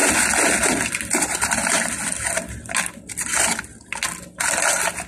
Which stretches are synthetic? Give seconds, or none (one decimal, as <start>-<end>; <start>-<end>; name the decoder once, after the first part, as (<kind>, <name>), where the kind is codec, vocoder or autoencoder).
none